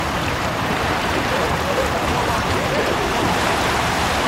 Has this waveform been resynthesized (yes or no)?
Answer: yes